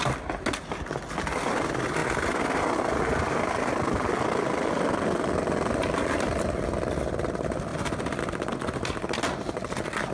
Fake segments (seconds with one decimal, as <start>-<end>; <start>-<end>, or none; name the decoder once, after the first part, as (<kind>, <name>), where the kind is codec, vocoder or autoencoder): none